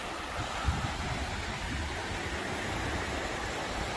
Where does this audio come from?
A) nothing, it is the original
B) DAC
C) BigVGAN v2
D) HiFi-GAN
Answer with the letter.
A